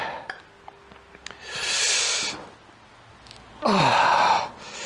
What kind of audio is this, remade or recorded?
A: recorded